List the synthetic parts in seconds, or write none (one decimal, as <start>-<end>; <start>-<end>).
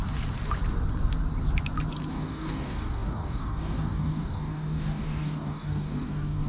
2.1-6.5